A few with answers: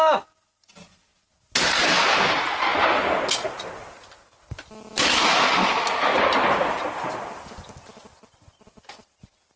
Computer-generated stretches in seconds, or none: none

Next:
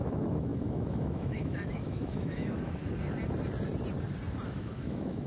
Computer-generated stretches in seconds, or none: 0.0-2.8 (autoencoder, DAC-VAE); 4.5-5.3

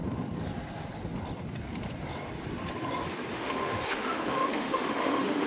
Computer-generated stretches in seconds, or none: 3.3-5.5 (autoencoder, DAC-VAE)

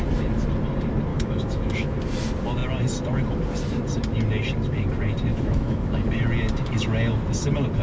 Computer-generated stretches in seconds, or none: 1.1-2.0 (autoencoder, DAC-VAE); 5.3-5.9